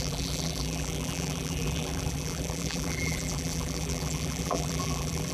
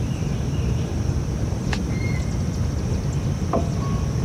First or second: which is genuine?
second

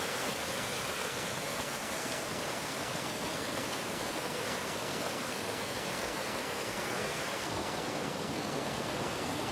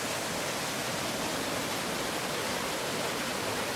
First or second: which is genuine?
second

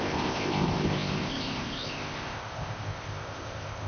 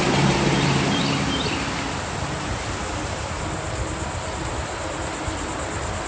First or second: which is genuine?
second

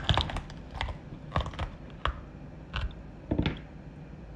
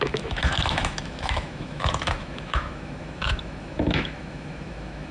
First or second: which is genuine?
first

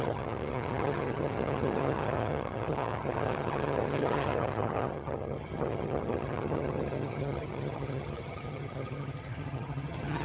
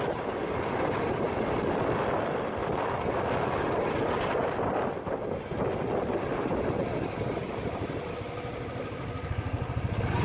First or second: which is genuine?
second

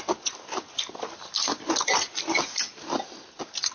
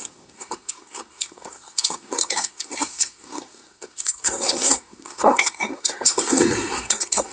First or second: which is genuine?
first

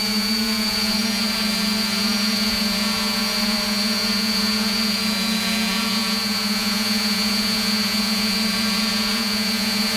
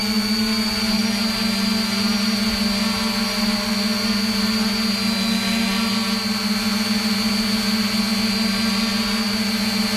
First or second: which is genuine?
second